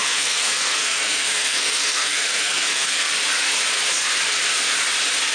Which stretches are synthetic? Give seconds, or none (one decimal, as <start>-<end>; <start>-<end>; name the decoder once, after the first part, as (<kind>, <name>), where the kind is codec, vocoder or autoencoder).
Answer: 0.0-3.1 (codec, SNAC)

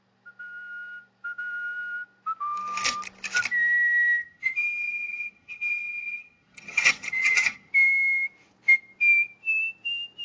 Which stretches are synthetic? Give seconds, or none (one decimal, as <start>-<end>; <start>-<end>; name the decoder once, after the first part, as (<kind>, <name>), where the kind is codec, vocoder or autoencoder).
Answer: 4.2-7.7 (vocoder, HiFi-GAN)

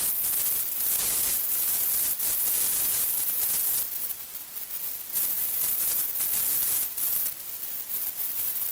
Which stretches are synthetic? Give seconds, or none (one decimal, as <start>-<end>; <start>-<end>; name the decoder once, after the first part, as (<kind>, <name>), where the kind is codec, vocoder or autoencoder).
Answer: none